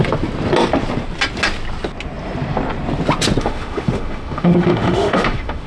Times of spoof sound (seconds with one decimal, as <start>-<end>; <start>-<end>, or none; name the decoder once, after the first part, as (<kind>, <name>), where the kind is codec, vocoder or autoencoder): 3.4-5.7 (autoencoder, DAC-VAE)